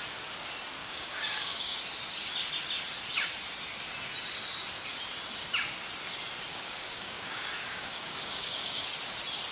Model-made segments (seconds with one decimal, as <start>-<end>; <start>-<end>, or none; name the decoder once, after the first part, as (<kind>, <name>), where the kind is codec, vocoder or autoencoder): 0.8-1.8 (codec, DAC); 6.5-8.8